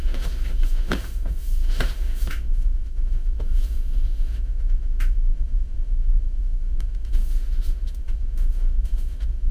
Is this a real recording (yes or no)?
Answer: no